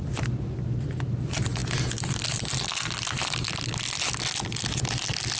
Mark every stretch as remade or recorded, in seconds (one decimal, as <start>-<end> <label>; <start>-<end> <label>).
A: 0.0-5.4 recorded